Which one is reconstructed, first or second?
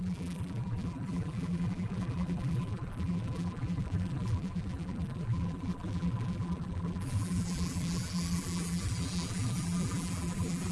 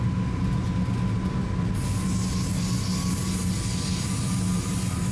first